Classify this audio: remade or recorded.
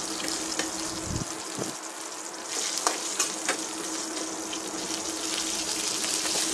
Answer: recorded